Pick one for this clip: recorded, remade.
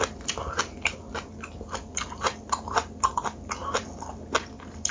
recorded